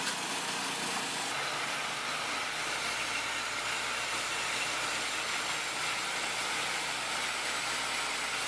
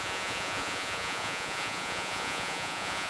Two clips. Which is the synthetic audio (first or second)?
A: second